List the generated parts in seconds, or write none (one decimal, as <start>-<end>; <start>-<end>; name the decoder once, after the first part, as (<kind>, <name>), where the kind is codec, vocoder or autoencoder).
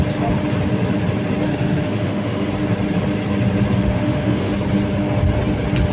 1.5-2.5 (autoencoder, DAC-VAE); 3.8-4.5